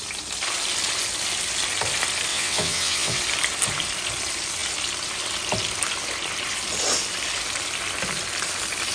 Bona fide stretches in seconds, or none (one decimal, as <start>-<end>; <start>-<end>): 0.0-2.3; 3.2-8.9